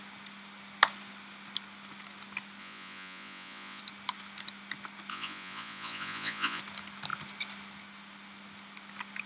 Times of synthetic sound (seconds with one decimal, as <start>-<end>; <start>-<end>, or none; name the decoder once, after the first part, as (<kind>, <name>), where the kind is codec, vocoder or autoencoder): 2.6-3.8 (vocoder, Vocos); 5.1-6.6